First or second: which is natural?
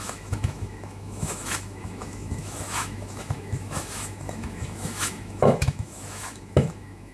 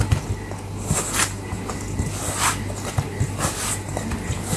second